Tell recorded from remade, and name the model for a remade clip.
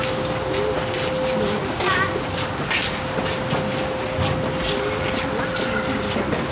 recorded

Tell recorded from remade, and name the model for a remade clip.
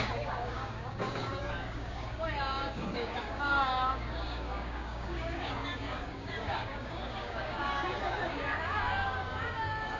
remade, codec, DAC